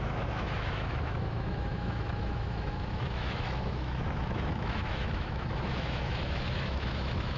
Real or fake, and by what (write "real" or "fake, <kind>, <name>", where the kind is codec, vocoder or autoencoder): fake, autoencoder, DAC-VAE